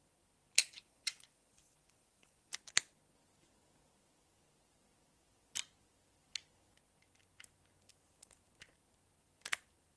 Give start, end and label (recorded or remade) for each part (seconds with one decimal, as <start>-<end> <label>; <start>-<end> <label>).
0.0-0.6 recorded; 0.6-2.5 remade; 2.5-10.0 recorded